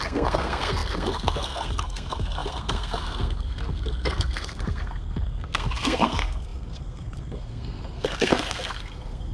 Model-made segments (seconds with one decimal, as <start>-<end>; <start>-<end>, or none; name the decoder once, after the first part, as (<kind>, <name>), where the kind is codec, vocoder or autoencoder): 0.0-9.3 (codec, SNAC)